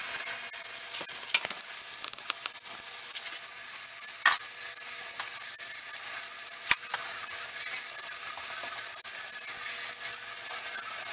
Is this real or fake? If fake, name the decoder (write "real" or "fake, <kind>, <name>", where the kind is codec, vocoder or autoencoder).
real